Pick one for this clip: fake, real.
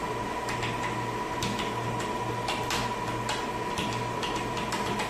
real